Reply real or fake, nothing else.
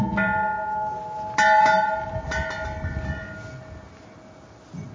real